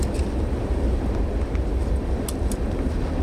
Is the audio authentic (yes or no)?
yes